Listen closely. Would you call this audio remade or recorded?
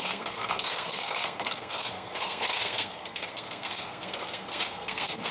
remade